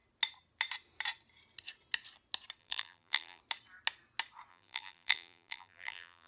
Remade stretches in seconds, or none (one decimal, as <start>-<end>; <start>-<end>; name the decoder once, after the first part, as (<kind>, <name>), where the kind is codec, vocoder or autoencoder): 2.6-3.4 (vocoder, BigVGAN v2); 4.5-6.3